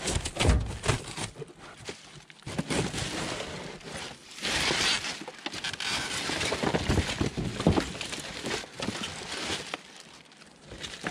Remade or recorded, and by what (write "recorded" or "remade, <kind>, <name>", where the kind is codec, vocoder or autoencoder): recorded